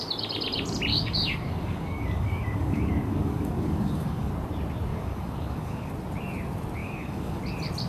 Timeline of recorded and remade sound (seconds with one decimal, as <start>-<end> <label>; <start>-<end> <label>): 0.0-0.9 recorded; 0.9-4.3 remade; 4.3-4.9 recorded; 4.9-5.9 remade; 5.9-6.8 recorded; 6.8-7.4 remade; 7.4-7.9 recorded